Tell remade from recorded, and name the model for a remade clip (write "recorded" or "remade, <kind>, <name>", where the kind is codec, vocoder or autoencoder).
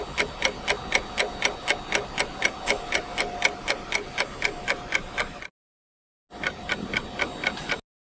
recorded